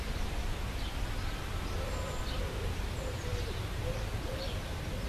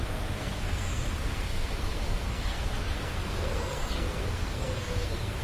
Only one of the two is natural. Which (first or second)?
first